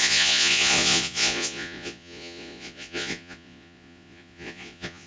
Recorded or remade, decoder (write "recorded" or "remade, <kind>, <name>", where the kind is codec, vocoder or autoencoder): remade, vocoder, Vocos